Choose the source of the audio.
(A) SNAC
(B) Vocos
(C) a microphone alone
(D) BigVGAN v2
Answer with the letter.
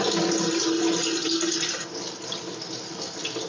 C